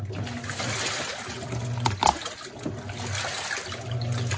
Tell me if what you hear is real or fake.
real